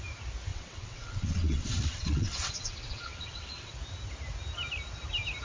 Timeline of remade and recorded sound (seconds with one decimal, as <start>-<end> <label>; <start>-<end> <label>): 0.0-0.5 recorded; 0.5-3.7 remade; 3.7-5.4 recorded

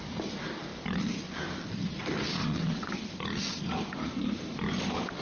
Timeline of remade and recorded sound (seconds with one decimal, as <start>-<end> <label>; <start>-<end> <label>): 0.0-2.4 recorded; 2.4-2.9 remade; 2.9-5.2 recorded

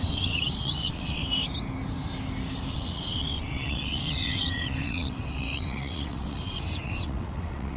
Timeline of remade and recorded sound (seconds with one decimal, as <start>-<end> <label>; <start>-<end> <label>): 0.0-1.2 remade; 1.2-2.7 recorded; 2.7-7.8 remade

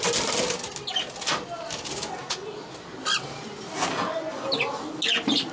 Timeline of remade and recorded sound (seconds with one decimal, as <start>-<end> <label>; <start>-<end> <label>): 0.0-5.5 recorded

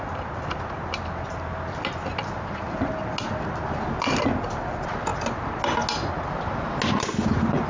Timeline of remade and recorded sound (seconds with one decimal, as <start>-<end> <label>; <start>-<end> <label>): 0.0-7.7 recorded